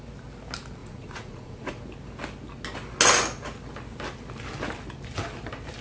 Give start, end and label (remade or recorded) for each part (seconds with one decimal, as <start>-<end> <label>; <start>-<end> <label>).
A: 0.0-0.8 recorded; 0.8-1.8 remade; 1.8-5.8 recorded